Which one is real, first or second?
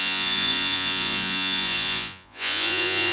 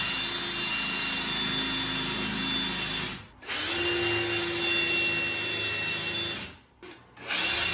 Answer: second